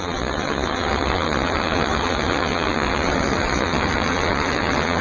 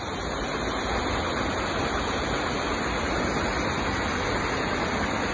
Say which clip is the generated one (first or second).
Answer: first